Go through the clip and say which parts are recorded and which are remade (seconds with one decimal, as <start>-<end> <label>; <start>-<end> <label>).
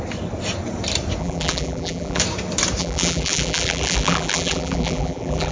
0.0-1.2 recorded; 1.2-2.2 remade; 2.2-2.8 recorded; 2.8-5.5 remade